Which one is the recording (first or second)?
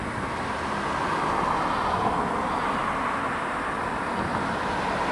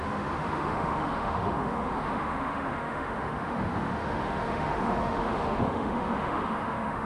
first